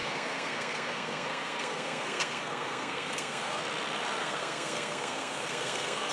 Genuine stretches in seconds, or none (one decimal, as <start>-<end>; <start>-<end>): 3.6-4.2